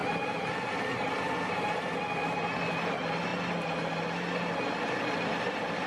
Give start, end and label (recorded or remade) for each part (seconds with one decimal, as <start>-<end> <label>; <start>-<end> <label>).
0.0-5.9 recorded